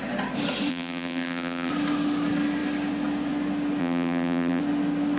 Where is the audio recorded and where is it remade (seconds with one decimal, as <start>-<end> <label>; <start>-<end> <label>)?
0.0-0.7 recorded; 0.7-1.7 remade; 1.7-3.8 recorded; 3.8-4.6 remade; 4.6-5.2 recorded